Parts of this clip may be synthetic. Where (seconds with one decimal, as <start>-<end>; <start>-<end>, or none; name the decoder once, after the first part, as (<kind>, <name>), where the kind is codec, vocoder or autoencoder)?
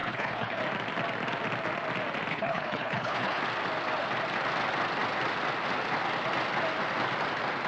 0.0-0.6 (codec, HILCodec); 2.3-3.4